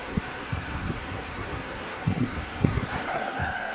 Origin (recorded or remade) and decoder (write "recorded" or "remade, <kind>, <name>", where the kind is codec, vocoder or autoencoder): remade, codec, SNAC